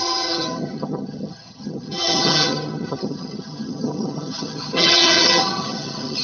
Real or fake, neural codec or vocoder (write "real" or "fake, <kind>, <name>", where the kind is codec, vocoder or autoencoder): fake, vocoder, HiFi-GAN